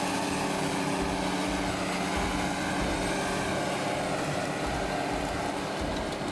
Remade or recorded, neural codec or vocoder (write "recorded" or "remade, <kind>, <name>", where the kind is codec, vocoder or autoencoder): recorded